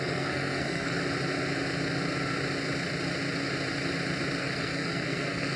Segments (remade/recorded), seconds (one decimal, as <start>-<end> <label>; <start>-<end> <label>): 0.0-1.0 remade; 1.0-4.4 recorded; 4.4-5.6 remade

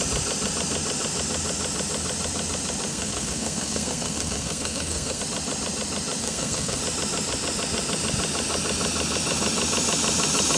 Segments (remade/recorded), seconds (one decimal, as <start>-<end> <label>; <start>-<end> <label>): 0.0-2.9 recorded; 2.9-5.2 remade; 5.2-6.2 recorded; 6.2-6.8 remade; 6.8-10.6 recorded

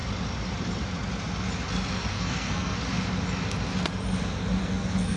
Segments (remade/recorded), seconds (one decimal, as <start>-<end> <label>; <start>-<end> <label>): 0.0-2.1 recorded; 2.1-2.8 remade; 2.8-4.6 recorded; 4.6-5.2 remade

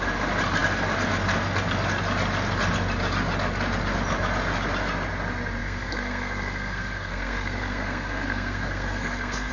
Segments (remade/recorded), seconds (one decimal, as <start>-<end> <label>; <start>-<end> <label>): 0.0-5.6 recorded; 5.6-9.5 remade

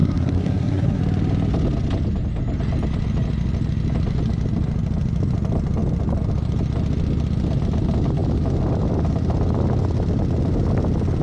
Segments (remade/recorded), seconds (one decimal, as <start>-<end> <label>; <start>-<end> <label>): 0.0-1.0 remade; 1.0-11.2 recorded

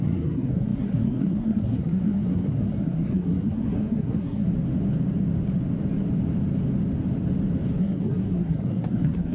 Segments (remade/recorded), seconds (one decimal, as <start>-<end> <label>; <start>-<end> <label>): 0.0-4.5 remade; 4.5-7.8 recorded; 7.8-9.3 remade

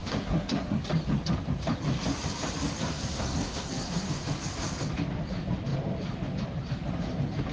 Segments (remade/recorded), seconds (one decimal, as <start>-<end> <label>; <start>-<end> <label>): 0.0-0.8 remade; 0.8-2.8 recorded; 2.8-4.1 remade; 4.1-7.5 recorded

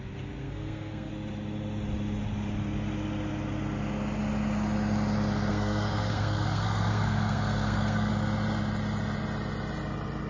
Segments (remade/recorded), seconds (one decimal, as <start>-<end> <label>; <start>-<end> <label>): 0.0-0.4 recorded; 0.4-1.1 remade; 1.1-5.5 recorded; 5.5-8.1 remade; 8.1-10.3 recorded